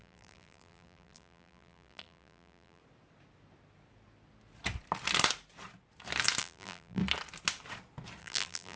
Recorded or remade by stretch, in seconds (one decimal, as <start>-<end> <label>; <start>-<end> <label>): 0.0-2.8 remade; 2.8-6.4 recorded; 6.4-7.0 remade; 7.0-8.2 recorded; 8.2-8.8 remade